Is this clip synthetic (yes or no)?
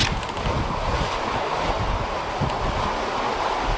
no